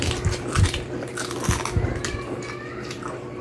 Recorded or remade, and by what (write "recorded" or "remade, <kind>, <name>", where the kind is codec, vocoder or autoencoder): remade, vocoder, BigVGAN v2